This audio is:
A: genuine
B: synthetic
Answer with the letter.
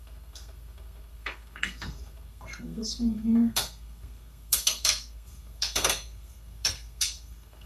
B